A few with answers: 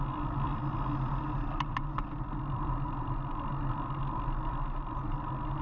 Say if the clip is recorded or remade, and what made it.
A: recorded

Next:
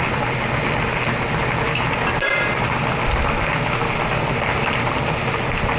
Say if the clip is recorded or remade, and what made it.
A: recorded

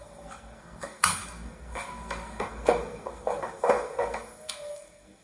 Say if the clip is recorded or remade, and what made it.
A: remade, codec, SNAC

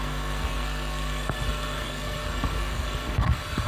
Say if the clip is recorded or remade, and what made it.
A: remade, codec, SNAC